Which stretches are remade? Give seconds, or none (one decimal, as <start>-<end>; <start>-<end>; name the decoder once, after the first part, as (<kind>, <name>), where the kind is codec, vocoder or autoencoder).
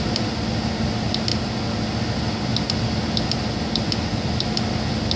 none